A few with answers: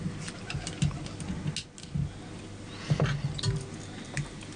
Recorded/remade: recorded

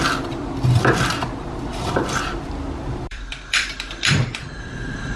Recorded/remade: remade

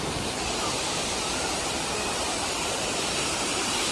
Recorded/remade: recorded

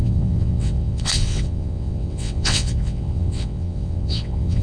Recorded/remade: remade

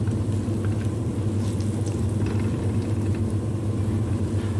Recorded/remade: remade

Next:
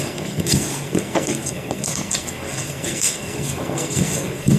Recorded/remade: remade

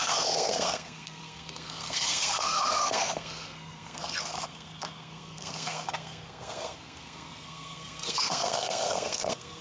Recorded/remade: remade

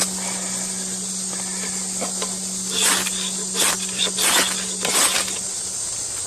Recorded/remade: recorded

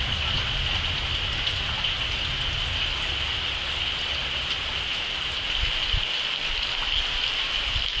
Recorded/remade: recorded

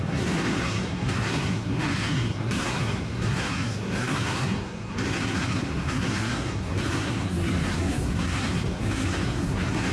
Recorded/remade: remade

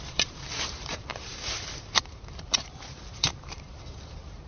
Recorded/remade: remade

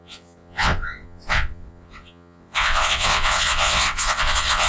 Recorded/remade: remade